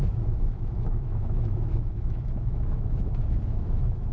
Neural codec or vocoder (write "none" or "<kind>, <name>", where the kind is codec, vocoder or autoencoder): autoencoder, DAC-VAE